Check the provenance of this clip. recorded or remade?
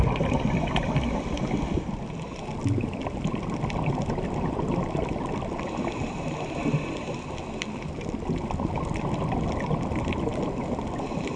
recorded